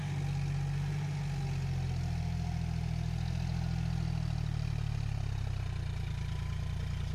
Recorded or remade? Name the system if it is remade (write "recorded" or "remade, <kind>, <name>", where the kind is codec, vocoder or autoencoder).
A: recorded